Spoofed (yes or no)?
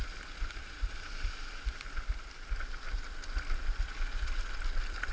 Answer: no